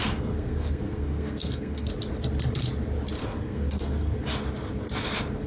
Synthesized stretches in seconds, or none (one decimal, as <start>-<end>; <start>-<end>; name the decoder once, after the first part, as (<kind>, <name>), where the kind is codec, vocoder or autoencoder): 0.0-1.9 (codec, SNAC); 3.2-4.2